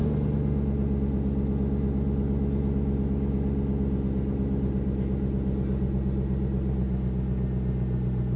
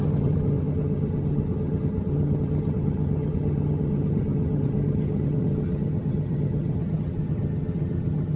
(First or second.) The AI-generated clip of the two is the second